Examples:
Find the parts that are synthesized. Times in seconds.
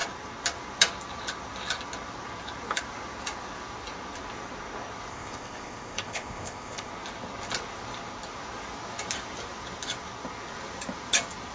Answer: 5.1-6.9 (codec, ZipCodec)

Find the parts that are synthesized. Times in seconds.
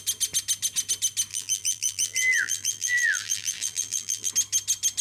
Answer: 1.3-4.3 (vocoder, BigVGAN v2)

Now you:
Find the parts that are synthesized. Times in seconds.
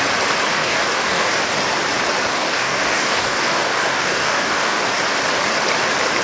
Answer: 0.5-1.3 (codec, DAC); 2.3-4.8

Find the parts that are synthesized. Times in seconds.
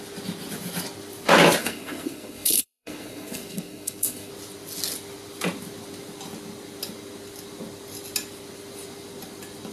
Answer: 1.6-4.3 (codec, SNAC)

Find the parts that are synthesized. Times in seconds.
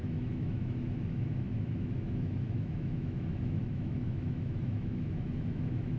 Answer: 0.0-6.0 (autoencoder, DAC-VAE)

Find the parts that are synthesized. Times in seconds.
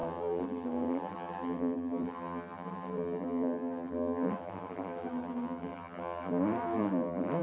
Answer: 0.0-7.4 (vocoder, BigVGAN v2)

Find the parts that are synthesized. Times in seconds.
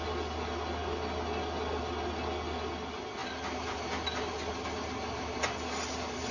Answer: none